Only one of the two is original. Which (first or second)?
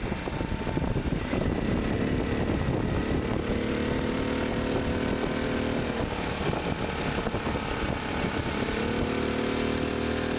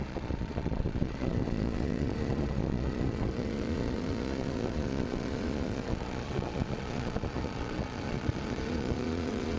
first